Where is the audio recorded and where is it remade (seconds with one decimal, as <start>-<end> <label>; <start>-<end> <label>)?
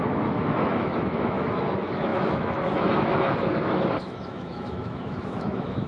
0.0-5.9 remade